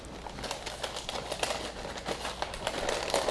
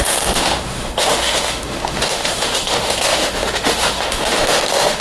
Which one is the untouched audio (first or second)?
first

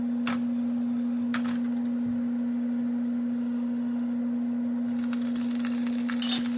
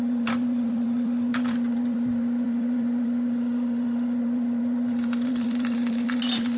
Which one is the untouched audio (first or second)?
first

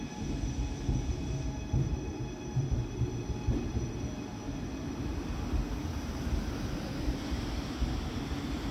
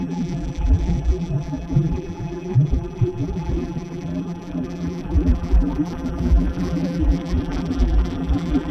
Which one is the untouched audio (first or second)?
first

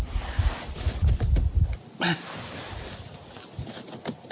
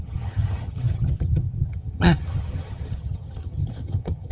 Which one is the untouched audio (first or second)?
first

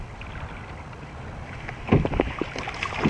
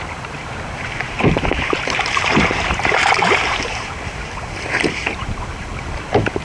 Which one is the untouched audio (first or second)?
first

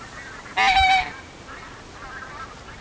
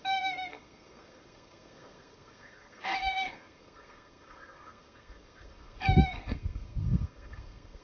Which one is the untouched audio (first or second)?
first